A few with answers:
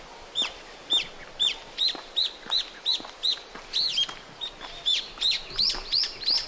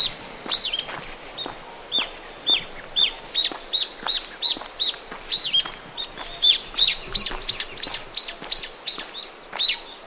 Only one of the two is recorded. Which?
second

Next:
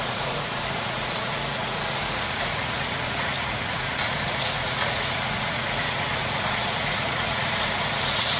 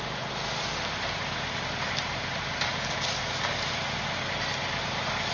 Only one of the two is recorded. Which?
second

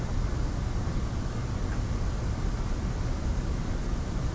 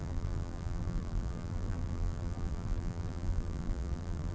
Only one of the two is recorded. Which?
first